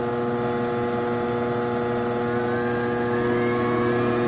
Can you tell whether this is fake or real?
real